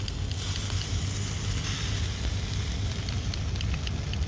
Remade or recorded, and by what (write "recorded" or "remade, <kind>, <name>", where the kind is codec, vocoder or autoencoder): recorded